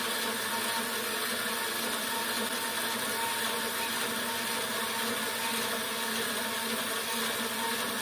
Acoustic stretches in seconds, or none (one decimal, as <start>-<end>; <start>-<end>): 0.0-8.0

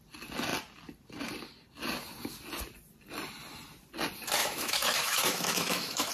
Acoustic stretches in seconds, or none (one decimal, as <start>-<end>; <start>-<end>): 0.0-4.4

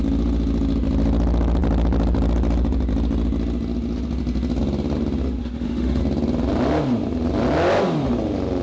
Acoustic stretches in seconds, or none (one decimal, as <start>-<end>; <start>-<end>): 0.0-5.4; 6.0-8.6

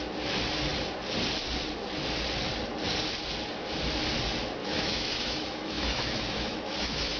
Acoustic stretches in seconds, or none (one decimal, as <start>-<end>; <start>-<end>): 0.0-4.6

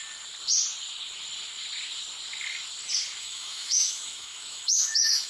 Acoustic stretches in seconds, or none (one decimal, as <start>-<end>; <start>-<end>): 0.0-3.2

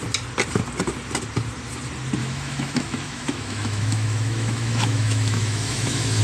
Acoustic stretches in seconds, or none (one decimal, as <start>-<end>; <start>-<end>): 0.0-2.2